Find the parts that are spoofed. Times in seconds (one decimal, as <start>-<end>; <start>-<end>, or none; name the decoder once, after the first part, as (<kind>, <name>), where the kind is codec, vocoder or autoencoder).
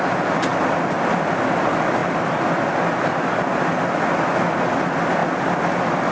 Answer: none